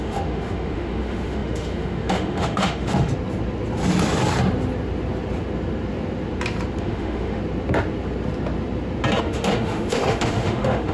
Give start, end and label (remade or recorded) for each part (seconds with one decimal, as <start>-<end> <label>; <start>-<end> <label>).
0.0-3.1 remade; 3.1-6.8 recorded; 6.8-7.4 remade; 7.4-9.2 recorded; 9.2-10.9 remade